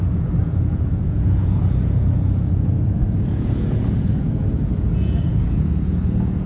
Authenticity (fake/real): fake